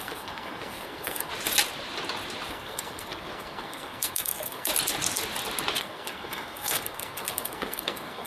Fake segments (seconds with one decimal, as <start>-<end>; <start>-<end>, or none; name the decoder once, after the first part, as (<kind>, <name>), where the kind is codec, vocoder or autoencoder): 0.0-1.3 (codec, SNAC); 2.5-4.7; 5.8-8.3